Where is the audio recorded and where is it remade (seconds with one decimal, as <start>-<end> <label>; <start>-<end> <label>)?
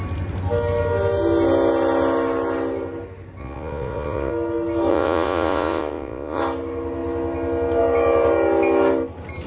0.0-3.4 recorded; 3.4-4.3 remade; 4.3-4.9 recorded; 4.9-6.4 remade; 6.4-9.5 recorded